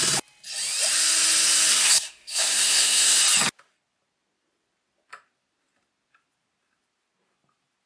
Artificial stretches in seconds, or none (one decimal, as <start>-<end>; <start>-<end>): 1.7-3.2